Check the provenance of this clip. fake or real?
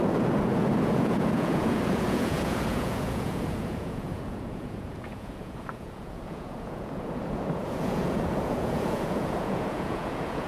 fake